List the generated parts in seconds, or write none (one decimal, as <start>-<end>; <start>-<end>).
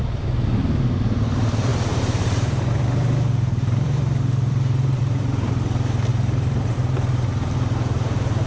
1.7-5.5; 6.1-7.3